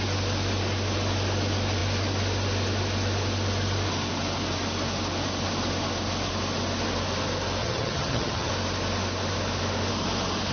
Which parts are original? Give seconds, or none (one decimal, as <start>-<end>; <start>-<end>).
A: 0.0-7.6; 8.5-10.5